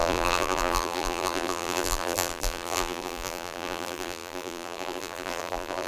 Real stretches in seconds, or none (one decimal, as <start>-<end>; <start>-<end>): none